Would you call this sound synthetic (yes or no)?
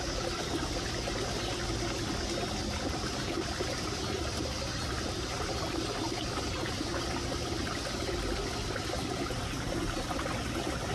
no